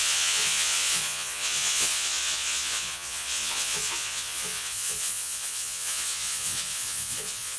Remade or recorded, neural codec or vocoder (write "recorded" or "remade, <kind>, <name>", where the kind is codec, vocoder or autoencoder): remade, vocoder, Vocos